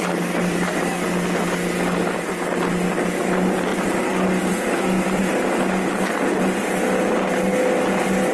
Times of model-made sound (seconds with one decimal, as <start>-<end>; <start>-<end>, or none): none